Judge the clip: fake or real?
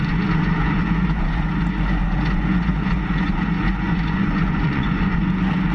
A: fake